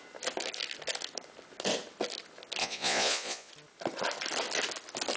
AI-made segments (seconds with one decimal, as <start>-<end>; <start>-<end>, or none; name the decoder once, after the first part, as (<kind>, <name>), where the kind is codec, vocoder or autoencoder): 2.6-3.5 (vocoder, Vocos)